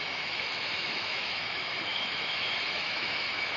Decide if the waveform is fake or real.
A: fake